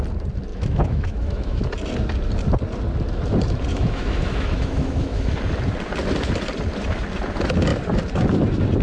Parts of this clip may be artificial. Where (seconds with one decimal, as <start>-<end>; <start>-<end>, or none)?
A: 0.5-1.6; 3.7-5.3